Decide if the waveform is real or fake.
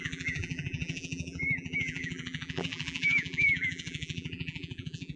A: fake